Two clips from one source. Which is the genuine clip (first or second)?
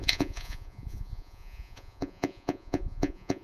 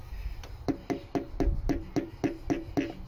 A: second